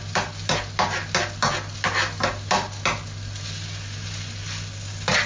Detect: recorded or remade recorded